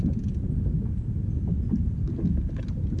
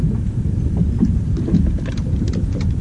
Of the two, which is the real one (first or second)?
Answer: first